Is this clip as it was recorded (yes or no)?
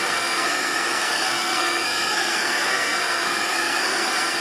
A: no